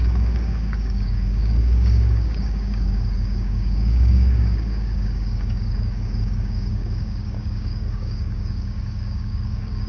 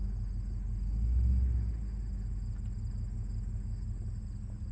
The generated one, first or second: first